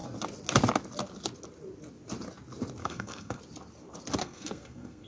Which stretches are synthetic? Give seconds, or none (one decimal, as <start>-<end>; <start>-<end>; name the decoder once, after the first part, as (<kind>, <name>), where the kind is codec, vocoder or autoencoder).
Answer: 2.8-3.4 (codec, SNAC); 4.2-5.1